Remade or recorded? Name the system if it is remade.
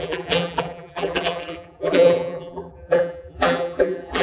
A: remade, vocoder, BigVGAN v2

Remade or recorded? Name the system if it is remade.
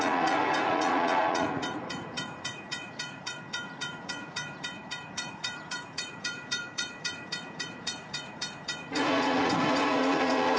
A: remade, vocoder, Vocos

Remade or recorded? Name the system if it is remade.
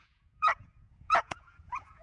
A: remade, vocoder, Vocos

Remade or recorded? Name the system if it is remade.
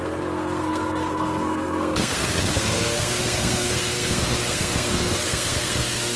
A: remade, codec, SNAC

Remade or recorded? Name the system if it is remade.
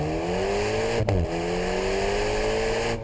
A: recorded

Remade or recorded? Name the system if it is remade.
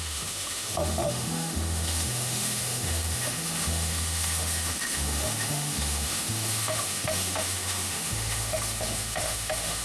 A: remade, autoencoder, DAC-VAE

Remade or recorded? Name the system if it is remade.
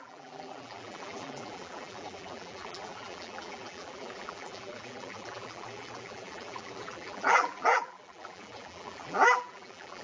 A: remade, vocoder, BigVGAN v2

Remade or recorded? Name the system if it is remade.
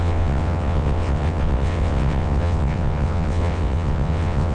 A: remade, vocoder, WaveNeXt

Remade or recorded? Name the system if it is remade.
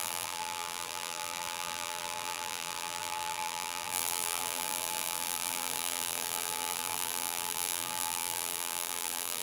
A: remade, vocoder, BigVGAN v2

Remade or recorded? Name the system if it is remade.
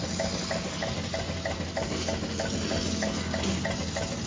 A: recorded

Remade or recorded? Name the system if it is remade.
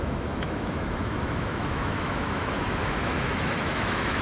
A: remade, autoencoder, DAC-VAE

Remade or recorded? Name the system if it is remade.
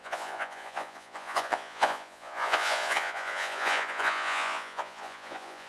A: remade, vocoder, Vocos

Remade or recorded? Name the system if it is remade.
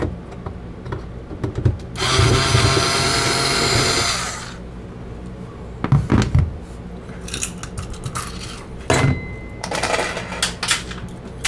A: recorded